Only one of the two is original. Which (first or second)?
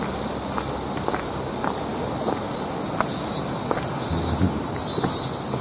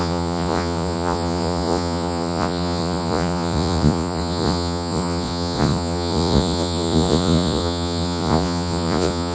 first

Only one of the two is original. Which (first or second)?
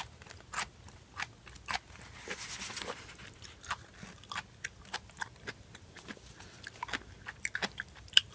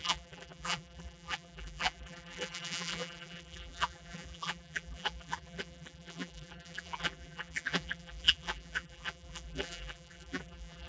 first